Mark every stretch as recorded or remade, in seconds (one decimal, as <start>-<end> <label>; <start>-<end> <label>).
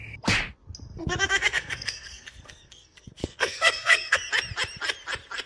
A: 0.0-1.0 recorded; 1.0-4.3 remade; 4.3-5.5 recorded